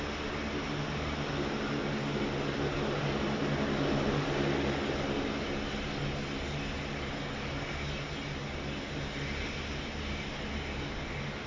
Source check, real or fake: real